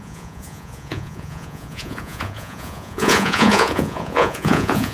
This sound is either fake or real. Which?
fake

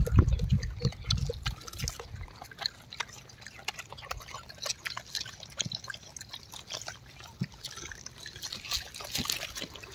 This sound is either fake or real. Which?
real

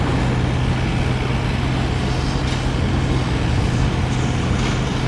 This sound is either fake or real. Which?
real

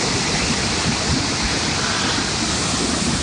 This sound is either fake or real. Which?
real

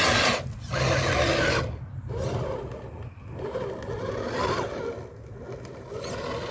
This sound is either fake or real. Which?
real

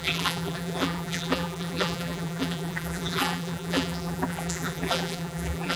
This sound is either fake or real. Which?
fake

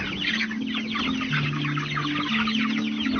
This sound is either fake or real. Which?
real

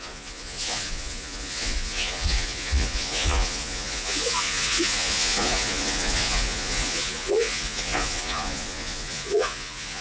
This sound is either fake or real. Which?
fake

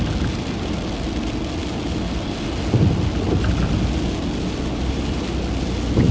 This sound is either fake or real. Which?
real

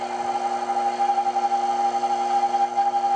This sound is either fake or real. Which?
real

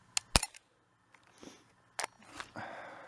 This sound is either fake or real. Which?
real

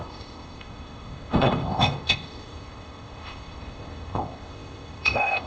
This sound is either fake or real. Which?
fake